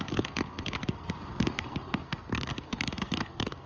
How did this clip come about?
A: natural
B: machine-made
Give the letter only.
B